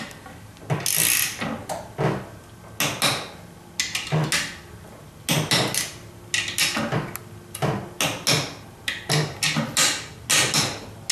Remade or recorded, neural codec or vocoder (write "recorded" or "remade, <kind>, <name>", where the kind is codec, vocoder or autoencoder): recorded